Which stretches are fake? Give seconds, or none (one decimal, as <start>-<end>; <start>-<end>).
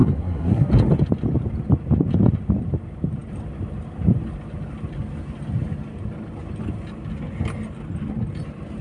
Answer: 0.0-0.7